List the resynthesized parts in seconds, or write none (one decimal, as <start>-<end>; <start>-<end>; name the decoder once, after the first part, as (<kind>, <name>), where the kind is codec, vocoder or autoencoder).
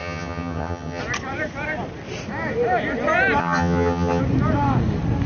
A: 0.0-1.0 (vocoder, HiFi-GAN); 3.4-4.2